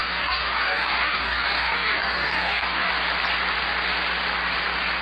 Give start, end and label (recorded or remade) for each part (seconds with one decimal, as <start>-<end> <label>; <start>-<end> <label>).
0.0-2.9 remade; 2.9-5.0 recorded

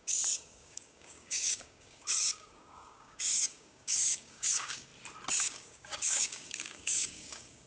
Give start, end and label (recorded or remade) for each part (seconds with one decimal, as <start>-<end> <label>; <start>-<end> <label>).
0.0-4.9 remade; 4.9-5.4 recorded; 5.4-7.7 remade